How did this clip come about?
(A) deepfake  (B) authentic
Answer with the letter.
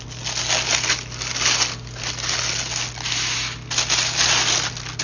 B